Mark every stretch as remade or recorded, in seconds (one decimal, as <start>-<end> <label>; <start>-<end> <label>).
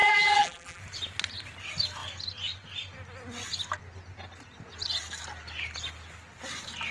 0.0-0.8 remade; 0.8-6.9 recorded